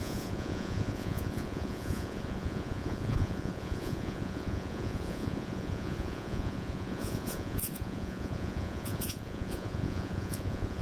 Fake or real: fake